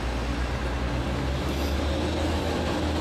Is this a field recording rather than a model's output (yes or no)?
yes